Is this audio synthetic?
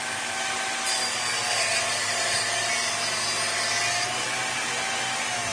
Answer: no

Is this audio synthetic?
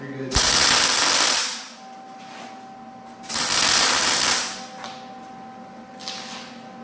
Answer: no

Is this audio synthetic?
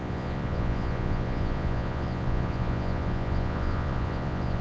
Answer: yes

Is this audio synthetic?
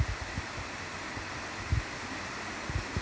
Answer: no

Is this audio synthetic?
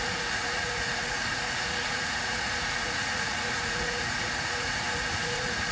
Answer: yes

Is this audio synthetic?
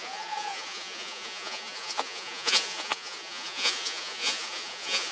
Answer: yes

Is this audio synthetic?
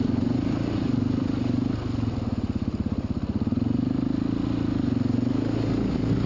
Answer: no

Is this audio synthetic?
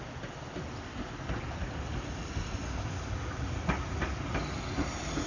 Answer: no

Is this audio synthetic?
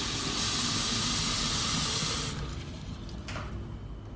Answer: no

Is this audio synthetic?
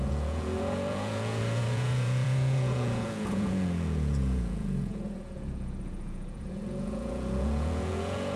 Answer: yes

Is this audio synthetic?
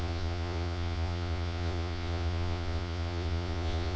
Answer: yes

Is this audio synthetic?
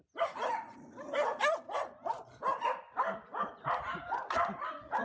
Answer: no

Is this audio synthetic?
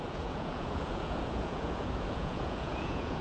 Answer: yes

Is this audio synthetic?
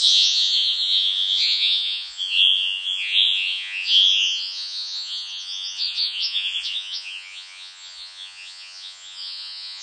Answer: yes